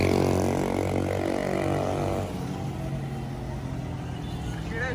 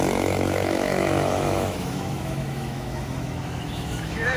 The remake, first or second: second